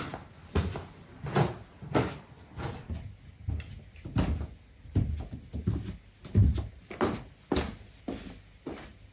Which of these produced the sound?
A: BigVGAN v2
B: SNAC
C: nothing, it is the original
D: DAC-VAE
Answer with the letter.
C